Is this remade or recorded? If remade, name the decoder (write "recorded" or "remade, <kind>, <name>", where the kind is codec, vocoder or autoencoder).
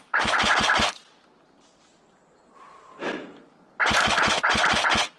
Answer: recorded